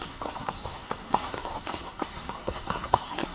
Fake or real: fake